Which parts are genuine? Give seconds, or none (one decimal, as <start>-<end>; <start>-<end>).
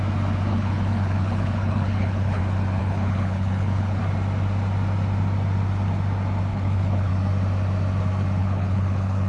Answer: 0.0-0.5; 2.4-2.8; 4.0-6.5; 7.1-8.4